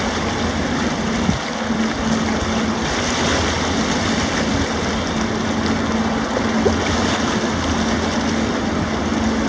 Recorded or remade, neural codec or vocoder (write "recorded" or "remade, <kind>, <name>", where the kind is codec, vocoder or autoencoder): recorded